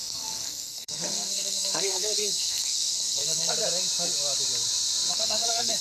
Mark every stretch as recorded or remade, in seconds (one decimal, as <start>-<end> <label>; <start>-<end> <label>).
0.0-3.5 remade; 3.5-5.1 recorded; 5.1-5.8 remade